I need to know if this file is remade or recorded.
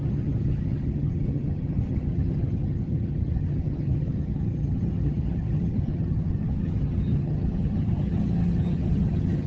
remade